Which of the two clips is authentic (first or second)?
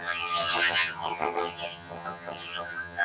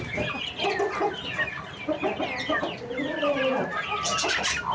second